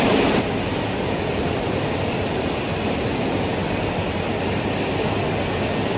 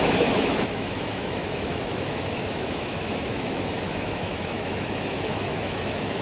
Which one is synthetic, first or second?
second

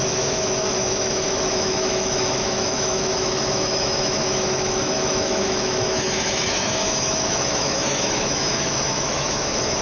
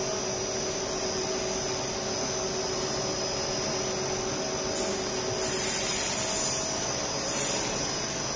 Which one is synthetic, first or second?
first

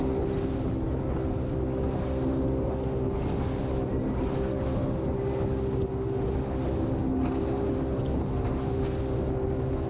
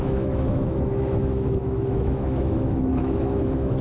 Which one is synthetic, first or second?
second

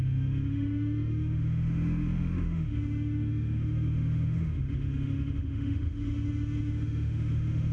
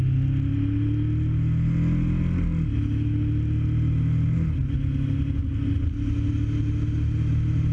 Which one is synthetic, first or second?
first